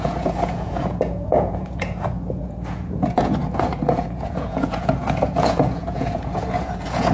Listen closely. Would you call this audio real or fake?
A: fake